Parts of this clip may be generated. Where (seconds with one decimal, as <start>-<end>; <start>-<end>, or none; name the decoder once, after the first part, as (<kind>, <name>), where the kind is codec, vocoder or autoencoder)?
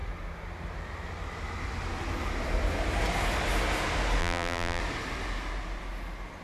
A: 4.2-4.8 (vocoder, BigVGAN v2)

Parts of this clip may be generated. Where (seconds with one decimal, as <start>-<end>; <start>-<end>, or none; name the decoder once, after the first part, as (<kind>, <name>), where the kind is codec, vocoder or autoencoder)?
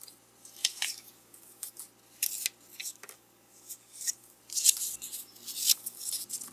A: 0.6-1.8 (codec, DAC); 2.8-4.4; 5.6-6.1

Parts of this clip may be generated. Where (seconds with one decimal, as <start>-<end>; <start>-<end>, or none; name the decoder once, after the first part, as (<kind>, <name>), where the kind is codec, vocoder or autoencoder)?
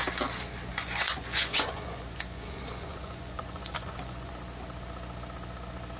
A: 0.7-4.3 (vocoder, Vocos)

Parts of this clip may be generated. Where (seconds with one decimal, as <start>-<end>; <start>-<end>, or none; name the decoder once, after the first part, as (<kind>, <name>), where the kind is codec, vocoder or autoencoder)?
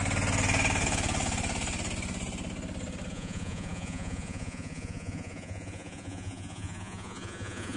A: 3.1-7.8 (vocoder, Vocos)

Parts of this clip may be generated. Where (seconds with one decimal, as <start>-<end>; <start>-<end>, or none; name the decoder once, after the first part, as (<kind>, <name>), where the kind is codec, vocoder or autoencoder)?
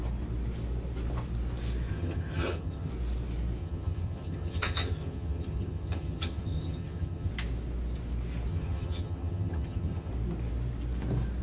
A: 1.9-2.9 (vocoder, HiFi-GAN); 3.6-7.3; 8.5-10.1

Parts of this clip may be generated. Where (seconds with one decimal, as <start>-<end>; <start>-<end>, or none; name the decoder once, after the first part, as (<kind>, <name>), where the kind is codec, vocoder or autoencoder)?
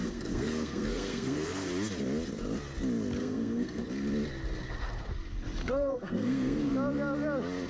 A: 0.0-1.7 (codec, SNAC); 3.2-3.8; 5.6-6.7